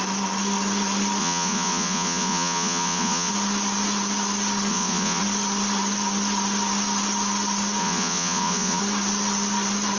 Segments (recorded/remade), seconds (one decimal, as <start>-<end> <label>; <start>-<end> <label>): 0.0-1.2 recorded; 1.2-3.3 remade; 3.3-4.7 recorded; 4.7-5.2 remade; 5.2-7.8 recorded; 7.8-8.8 remade; 8.8-10.0 recorded